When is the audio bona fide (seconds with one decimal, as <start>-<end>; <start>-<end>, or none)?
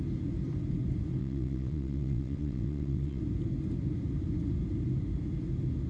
0.0-1.2; 3.2-5.9